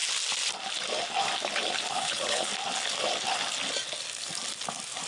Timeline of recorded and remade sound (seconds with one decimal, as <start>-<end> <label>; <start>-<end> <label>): 0.0-1.9 recorded; 1.9-2.5 remade; 2.5-5.1 recorded

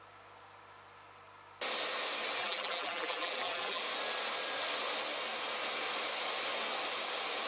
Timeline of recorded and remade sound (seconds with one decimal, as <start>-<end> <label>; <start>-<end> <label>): 0.0-2.4 recorded; 2.4-3.8 remade; 3.8-7.5 recorded

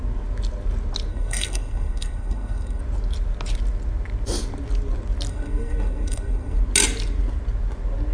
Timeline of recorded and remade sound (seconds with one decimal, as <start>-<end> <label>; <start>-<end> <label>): 0.0-1.1 recorded; 1.1-2.8 remade; 2.8-5.3 recorded; 5.3-6.6 remade; 6.6-8.1 recorded

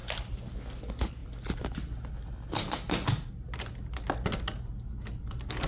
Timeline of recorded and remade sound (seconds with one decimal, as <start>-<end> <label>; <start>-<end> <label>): 0.0-5.7 recorded

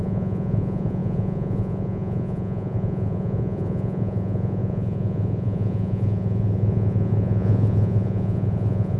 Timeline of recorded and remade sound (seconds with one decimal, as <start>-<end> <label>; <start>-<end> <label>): 0.0-9.0 remade